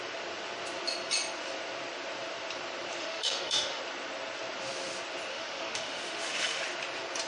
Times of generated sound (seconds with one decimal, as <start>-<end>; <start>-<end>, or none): 3.0-3.8; 5.3-6.6